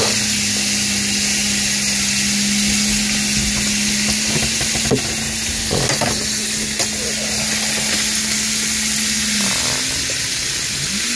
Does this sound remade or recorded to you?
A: recorded